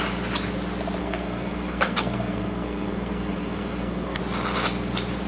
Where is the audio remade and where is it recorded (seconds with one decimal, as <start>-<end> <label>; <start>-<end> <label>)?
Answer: 0.0-1.0 recorded; 1.0-4.2 remade; 4.2-5.3 recorded